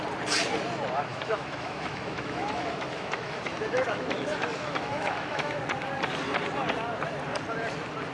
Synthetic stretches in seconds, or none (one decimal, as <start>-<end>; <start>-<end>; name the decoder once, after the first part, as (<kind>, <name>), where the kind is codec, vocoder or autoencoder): 1.1-5.6 (autoencoder, DAC-VAE)